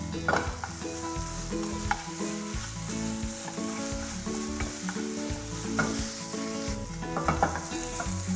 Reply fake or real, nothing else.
real